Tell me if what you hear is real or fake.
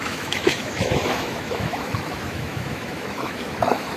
fake